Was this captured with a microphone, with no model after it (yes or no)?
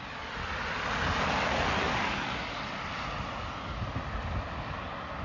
yes